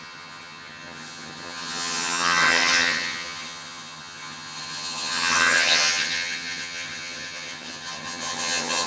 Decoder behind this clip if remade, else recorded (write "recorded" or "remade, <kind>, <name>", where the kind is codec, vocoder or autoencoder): remade, vocoder, HiFi-GAN